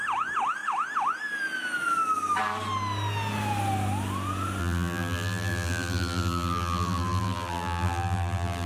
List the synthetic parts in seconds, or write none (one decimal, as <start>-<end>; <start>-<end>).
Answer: 4.6-8.7